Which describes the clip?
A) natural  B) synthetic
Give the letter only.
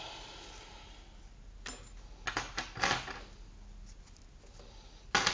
A